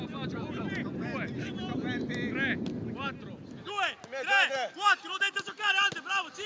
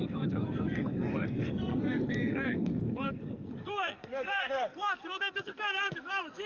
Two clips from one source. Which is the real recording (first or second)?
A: first